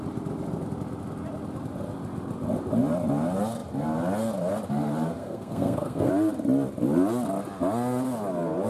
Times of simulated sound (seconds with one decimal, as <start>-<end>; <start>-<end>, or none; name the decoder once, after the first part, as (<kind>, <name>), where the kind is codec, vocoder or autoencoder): 5.2-6.1 (codec, SNAC)